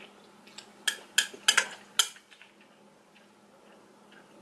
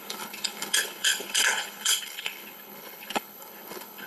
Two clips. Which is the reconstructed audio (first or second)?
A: second